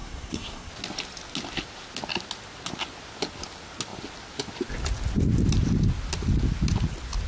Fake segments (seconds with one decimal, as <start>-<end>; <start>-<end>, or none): 0.0-0.7